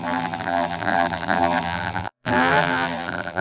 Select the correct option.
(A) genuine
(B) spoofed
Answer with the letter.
B